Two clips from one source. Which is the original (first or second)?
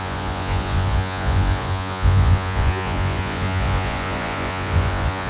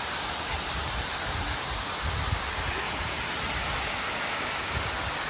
second